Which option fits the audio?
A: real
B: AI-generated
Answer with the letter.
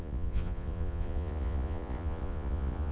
B